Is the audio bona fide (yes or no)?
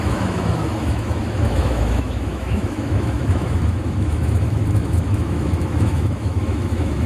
no